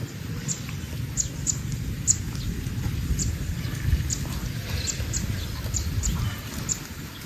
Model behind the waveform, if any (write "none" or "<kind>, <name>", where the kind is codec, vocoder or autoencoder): none